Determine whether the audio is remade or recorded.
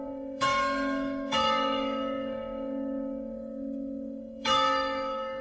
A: remade